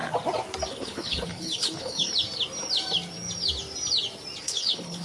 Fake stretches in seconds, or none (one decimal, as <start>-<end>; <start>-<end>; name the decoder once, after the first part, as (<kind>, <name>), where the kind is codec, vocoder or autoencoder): 0.7-2.1 (codec, HILCodec); 4.4-5.0